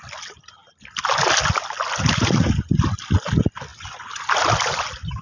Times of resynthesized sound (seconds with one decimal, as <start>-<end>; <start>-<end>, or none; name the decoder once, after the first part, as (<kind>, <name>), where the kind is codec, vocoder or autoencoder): none